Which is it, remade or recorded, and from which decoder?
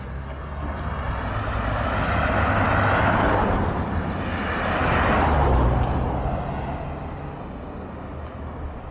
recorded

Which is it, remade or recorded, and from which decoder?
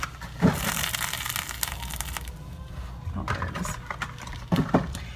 recorded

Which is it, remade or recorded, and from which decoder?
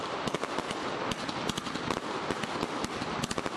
recorded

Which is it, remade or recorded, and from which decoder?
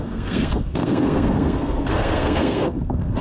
remade, codec, SNAC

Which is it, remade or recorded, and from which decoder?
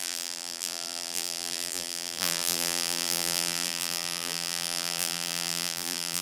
remade, vocoder, BigVGAN v2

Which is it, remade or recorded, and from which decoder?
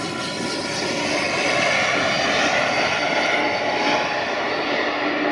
recorded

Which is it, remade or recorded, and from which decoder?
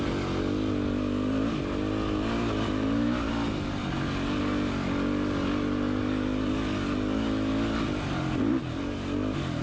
recorded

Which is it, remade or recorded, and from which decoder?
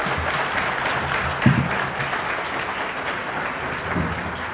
recorded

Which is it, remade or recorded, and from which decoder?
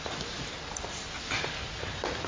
recorded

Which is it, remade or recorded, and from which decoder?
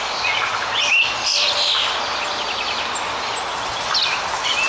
recorded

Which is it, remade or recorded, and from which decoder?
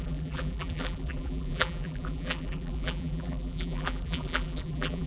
remade, vocoder, BigVGAN v2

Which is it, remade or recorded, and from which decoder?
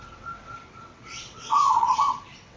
remade, vocoder, WaveNeXt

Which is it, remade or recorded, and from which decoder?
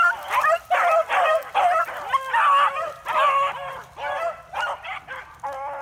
recorded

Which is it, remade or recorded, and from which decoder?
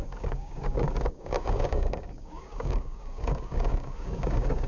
remade, codec, DAC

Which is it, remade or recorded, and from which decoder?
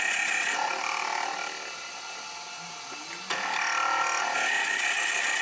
recorded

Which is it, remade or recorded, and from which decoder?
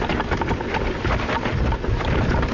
recorded